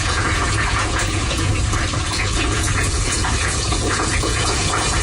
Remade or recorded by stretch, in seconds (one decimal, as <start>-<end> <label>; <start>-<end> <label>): 0.0-1.5 remade; 1.5-2.1 recorded; 2.1-5.0 remade